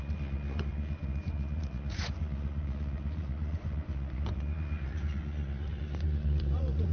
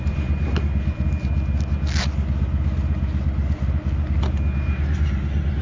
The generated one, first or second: first